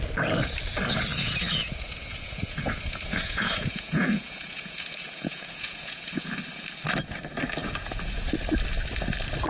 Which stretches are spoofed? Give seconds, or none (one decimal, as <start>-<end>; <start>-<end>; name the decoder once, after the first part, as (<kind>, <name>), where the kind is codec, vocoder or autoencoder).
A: 1.1-6.3 (vocoder, Vocos); 7.6-8.3